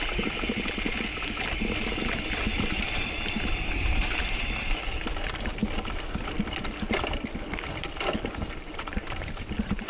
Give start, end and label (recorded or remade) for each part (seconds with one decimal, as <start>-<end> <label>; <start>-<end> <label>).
0.0-2.5 recorded; 2.5-4.2 remade; 4.2-8.9 recorded; 8.9-9.9 remade